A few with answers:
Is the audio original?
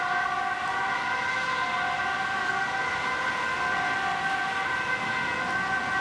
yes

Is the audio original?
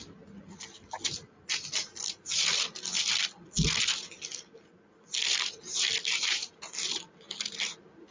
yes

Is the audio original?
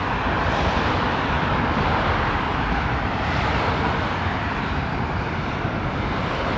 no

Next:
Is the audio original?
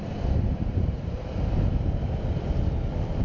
no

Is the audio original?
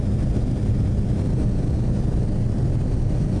yes